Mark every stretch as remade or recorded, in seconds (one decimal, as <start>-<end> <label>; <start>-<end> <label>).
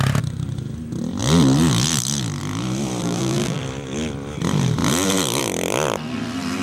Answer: 0.0-3.0 recorded; 3.0-3.6 remade; 3.6-6.6 recorded